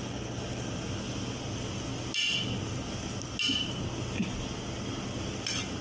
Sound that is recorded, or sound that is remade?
recorded